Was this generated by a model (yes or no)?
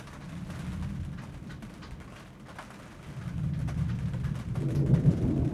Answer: no